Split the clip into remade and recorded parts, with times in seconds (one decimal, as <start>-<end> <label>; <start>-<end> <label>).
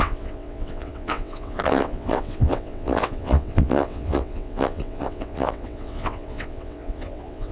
0.0-7.5 remade